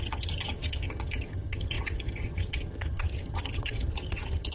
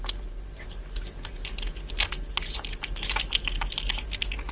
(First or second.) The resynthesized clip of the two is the first